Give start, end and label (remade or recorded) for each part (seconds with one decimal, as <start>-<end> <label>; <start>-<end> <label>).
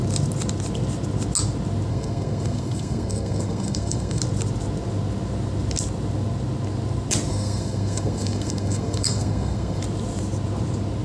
0.0-1.9 recorded; 1.9-4.2 remade; 4.2-7.3 recorded; 7.3-9.8 remade; 9.8-11.0 recorded